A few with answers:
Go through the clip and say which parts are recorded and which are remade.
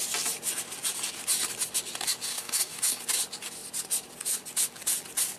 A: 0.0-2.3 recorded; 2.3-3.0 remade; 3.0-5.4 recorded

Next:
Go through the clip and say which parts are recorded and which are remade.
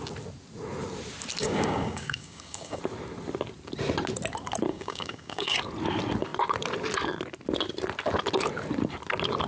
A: 0.0-1.4 recorded; 1.4-2.8 remade; 2.8-4.7 recorded; 4.7-5.6 remade; 5.6-9.5 recorded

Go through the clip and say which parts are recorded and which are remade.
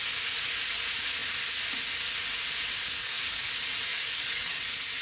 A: 0.0-3.0 recorded; 3.0-3.5 remade; 3.5-3.9 recorded; 3.9-4.6 remade; 4.6-5.0 recorded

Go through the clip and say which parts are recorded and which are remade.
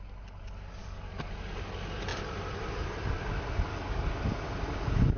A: 0.0-0.8 recorded; 0.8-1.3 remade; 1.3-3.7 recorded; 3.7-4.2 remade; 4.2-5.2 recorded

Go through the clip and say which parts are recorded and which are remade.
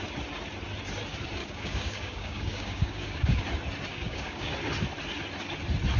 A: 0.0-1.4 recorded; 1.4-3.4 remade; 3.4-3.9 recorded; 3.9-4.5 remade; 4.5-6.0 recorded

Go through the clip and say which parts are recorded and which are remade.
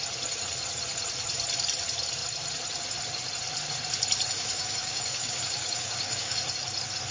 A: 0.0-4.3 recorded; 4.3-6.4 remade; 6.4-7.1 recorded